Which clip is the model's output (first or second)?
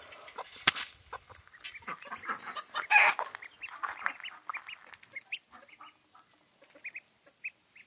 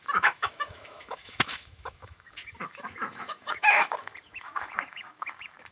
second